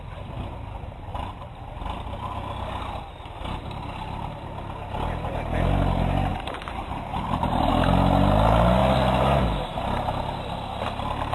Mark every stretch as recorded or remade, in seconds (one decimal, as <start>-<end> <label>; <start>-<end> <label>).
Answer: 0.0-1.1 recorded; 1.1-1.7 remade; 1.7-6.3 recorded; 6.3-7.7 remade; 7.7-11.3 recorded